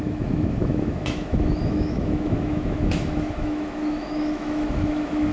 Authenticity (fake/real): fake